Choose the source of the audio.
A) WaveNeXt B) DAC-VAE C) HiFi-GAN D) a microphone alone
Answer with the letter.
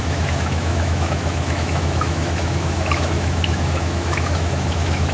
B